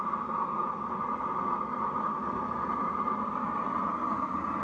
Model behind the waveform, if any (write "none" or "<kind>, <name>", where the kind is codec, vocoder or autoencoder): none